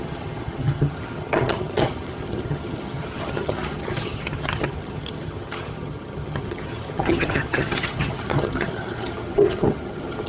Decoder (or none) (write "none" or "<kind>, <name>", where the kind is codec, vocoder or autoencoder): vocoder, HiFi-GAN